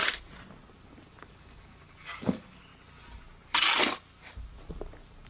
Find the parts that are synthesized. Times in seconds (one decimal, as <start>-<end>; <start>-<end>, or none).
1.3-2.7